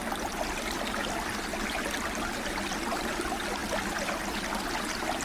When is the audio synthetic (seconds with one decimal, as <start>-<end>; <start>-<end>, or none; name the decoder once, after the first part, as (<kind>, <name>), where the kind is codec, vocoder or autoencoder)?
none